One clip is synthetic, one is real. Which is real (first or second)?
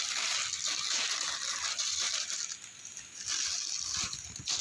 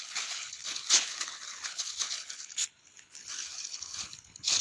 first